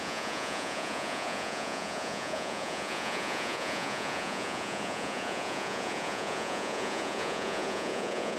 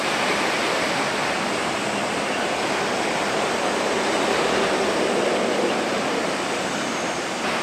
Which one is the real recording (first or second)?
second